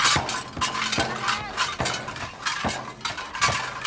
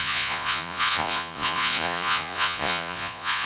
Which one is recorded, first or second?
first